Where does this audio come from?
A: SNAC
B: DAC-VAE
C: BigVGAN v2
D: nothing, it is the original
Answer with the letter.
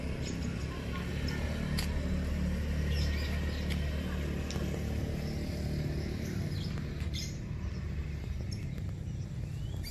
D